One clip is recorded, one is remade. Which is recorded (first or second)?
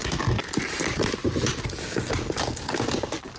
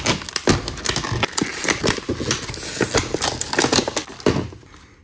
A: second